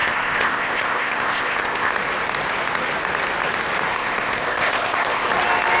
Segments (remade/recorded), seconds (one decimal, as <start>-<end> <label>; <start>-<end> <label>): 0.0-1.9 remade; 1.9-3.9 recorded; 3.9-5.3 remade; 5.3-5.8 recorded